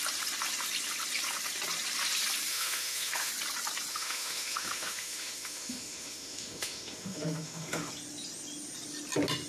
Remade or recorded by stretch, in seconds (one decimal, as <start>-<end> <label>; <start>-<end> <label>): 0.0-2.5 recorded; 2.5-3.3 remade; 3.3-3.9 recorded; 3.9-7.9 remade; 7.9-9.5 recorded

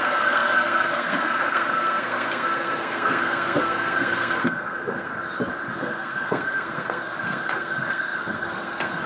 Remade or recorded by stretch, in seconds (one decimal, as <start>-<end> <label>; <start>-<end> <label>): 0.0-5.1 remade; 5.1-5.8 recorded; 5.8-9.1 remade

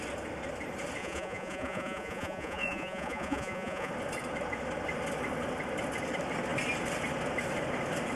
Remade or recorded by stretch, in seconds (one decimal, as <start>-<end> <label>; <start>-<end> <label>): 0.0-1.0 recorded; 1.0-3.9 remade; 3.9-8.2 recorded

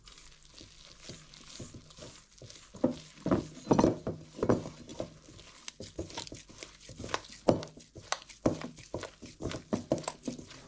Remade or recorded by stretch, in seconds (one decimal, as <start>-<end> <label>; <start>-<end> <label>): 0.0-10.7 recorded

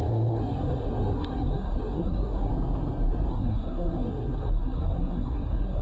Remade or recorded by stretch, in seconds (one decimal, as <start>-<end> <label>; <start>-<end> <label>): 0.0-2.5 remade; 2.5-3.3 recorded; 3.3-5.8 remade

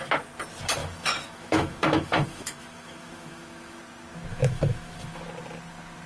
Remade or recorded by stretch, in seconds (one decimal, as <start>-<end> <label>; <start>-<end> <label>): 0.0-0.8 recorded; 0.8-3.8 remade; 3.8-4.3 recorded; 4.3-5.2 remade; 5.2-6.1 recorded